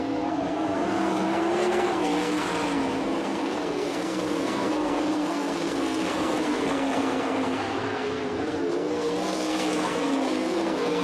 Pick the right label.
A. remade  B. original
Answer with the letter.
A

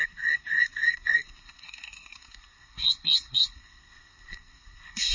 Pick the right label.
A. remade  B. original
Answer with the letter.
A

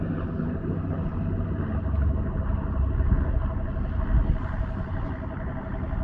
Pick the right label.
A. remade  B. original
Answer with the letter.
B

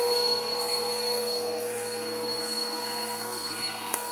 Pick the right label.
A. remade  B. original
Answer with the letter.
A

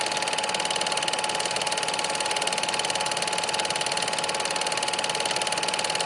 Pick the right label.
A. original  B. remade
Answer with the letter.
A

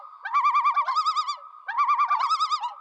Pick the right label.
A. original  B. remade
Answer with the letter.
A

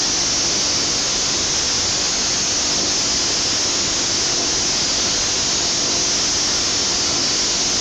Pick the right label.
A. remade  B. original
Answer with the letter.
B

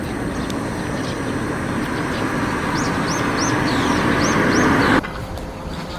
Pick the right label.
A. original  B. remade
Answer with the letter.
A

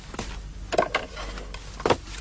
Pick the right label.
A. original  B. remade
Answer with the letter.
A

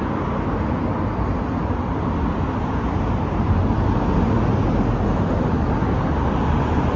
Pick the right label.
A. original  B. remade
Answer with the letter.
A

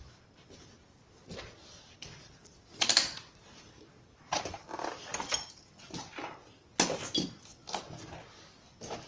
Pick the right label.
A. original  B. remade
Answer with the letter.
A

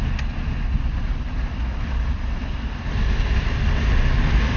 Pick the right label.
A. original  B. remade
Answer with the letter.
A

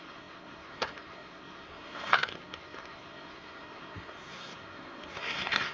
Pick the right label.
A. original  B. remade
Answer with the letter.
B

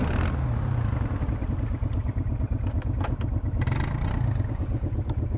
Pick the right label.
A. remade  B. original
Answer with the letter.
B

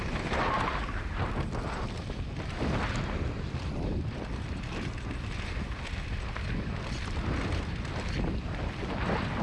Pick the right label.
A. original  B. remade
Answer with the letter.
A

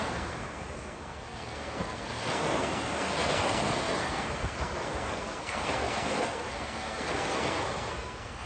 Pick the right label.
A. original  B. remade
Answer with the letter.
B